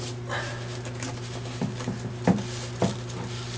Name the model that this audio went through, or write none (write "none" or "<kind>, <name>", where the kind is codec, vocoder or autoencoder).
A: none